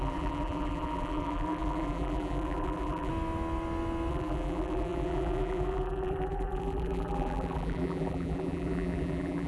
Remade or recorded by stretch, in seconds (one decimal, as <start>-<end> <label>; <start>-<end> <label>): 0.0-3.1 remade; 3.1-4.1 recorded; 4.1-9.5 remade